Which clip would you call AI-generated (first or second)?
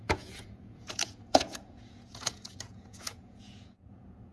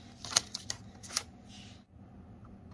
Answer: first